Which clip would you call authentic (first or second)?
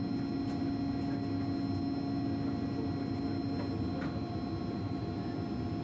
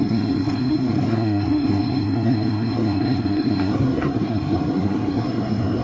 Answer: first